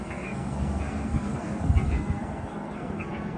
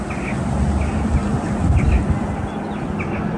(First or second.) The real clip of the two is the second